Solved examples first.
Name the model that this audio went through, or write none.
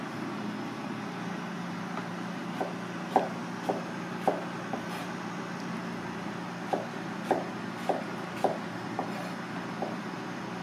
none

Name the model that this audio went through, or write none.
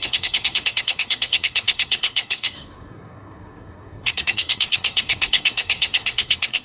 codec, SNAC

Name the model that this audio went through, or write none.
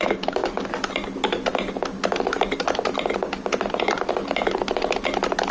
none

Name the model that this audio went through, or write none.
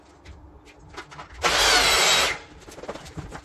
none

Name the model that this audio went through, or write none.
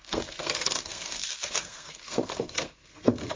codec, SNAC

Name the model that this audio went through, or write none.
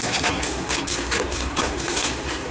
codec, SNAC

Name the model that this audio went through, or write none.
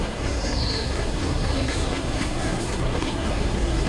codec, SNAC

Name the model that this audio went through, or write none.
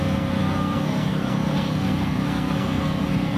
codec, SNAC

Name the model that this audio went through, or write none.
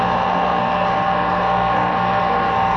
codec, SNAC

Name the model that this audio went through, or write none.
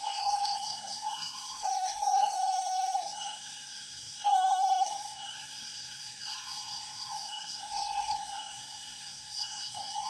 codec, SNAC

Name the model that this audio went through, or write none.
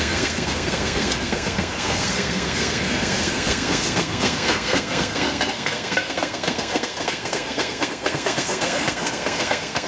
codec, SNAC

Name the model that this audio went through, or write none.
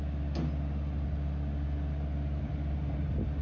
none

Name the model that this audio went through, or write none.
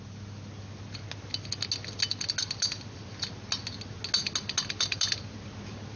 none